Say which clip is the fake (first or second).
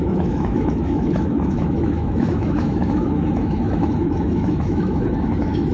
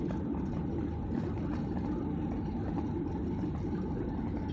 first